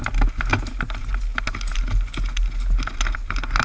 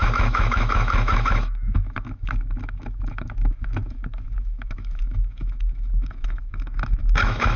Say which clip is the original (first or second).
first